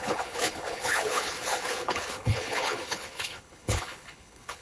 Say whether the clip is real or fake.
fake